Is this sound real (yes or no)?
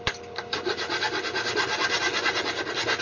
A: yes